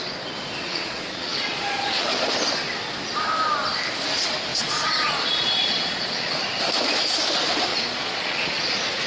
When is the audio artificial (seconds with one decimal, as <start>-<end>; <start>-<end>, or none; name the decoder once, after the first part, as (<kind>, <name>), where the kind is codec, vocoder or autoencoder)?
0.7-2.1 (vocoder, Vocos); 4.5-6.4; 7.7-8.6